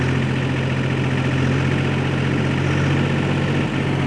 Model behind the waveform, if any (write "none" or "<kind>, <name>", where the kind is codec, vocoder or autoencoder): none